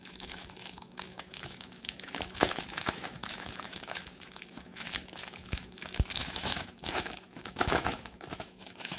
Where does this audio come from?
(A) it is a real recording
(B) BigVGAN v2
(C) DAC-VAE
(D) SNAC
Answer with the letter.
C